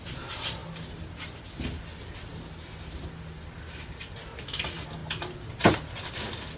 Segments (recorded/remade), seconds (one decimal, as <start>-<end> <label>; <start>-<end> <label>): 0.0-6.6 recorded